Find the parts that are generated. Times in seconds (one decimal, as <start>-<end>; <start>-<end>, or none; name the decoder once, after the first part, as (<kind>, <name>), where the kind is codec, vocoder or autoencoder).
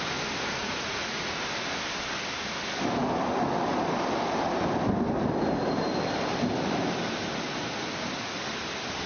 0.6-1.3 (vocoder, Vocos)